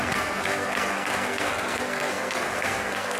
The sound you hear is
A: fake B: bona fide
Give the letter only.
A